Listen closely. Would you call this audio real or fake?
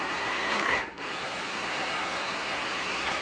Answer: fake